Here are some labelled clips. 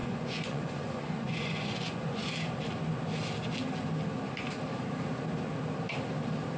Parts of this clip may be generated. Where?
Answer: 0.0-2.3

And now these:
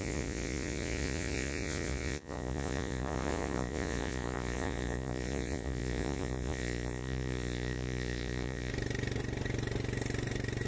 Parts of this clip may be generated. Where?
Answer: 0.0-8.7

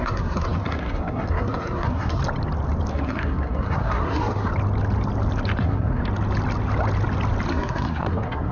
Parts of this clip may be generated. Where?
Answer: 0.0-2.2; 2.9-4.5; 5.6-6.0; 7.5-8.5

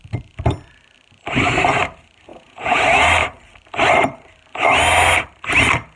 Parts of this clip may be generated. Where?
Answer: 2.3-2.8

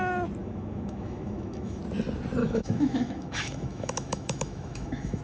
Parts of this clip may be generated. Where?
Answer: 0.4-1.8; 2.4-5.2

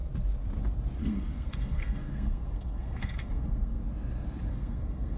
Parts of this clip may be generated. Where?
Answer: 1.0-3.8; 4.5-5.2

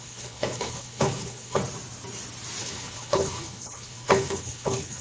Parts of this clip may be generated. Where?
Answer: 0.0-1.6; 2.6-5.0